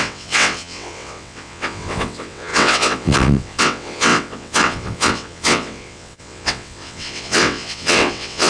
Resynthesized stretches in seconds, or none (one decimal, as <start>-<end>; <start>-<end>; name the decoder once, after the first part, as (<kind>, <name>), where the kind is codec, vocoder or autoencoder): 0.0-8.5 (vocoder, WaveNeXt)